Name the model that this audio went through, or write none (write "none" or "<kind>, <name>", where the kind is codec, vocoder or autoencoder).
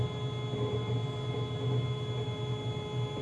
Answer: none